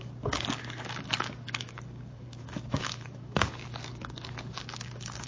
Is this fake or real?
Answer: fake